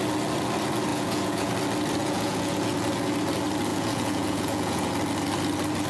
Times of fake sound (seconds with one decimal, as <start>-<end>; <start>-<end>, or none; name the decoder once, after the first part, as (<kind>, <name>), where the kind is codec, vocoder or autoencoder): 0.9-1.5 (vocoder, Vocos); 2.0-2.6; 3.7-4.9